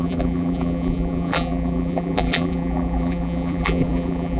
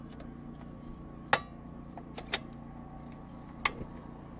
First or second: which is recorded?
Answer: second